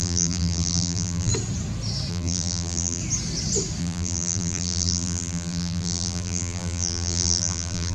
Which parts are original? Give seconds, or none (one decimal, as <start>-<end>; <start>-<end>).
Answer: 1.3-2.1; 3.0-3.8